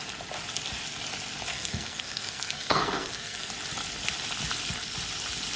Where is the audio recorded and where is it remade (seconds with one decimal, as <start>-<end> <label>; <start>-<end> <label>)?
0.0-1.5 recorded; 1.5-3.5 remade; 3.5-5.6 recorded